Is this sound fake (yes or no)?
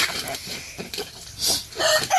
yes